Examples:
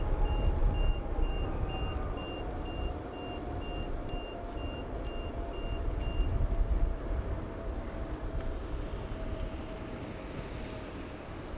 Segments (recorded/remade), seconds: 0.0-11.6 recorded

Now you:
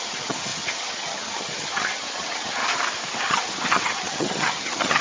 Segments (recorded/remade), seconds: 0.0-2.6 remade; 2.6-3.2 recorded; 3.2-5.0 remade